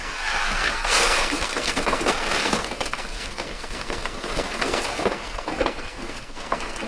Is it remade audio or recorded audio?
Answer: remade